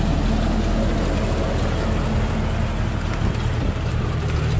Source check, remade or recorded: recorded